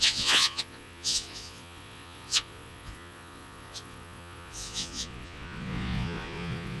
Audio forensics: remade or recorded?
remade